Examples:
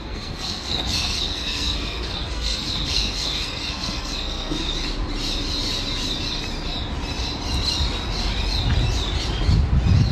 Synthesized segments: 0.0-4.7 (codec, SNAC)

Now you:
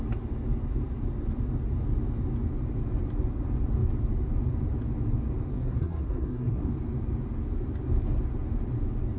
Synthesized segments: 5.5-6.7 (codec, SNAC)

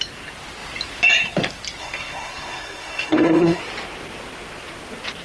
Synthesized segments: 1.8-3.6 (codec, SNAC)

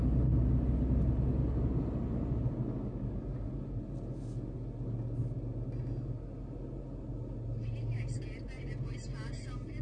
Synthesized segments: none